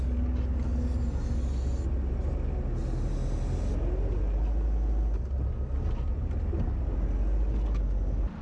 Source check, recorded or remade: recorded